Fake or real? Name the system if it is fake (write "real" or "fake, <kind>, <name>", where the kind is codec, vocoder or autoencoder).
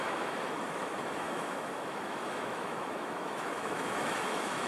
fake, autoencoder, DAC-VAE